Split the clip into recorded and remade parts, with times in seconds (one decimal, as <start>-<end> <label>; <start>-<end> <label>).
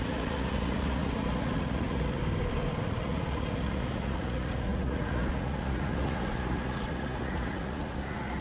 0.0-2.2 remade; 2.2-2.8 recorded; 2.8-8.4 remade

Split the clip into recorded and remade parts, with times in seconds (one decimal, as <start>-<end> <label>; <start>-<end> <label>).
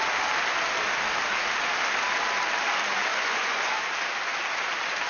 0.0-3.1 recorded; 3.1-3.8 remade; 3.8-5.1 recorded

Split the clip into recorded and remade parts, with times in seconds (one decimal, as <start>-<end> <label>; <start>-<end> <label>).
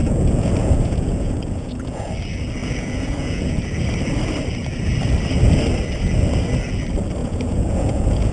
0.0-2.1 remade; 2.1-2.6 recorded; 2.6-3.6 remade; 3.6-7.2 recorded; 7.2-8.3 remade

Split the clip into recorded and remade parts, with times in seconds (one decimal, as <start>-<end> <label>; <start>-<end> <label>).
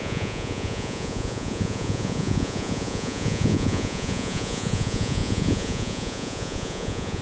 0.0-7.2 remade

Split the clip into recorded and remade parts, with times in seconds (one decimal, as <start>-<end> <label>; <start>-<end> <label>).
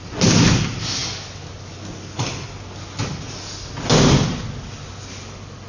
0.0-5.7 recorded